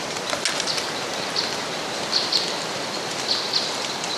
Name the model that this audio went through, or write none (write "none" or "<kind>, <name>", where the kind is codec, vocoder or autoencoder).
none